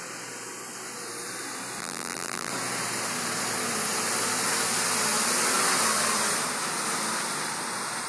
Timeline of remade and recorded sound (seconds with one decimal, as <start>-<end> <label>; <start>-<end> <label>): 0.0-1.8 recorded; 1.8-2.5 remade; 2.5-8.1 recorded